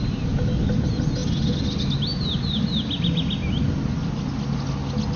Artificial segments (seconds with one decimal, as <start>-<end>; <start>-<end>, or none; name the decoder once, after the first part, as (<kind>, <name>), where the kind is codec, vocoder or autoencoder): none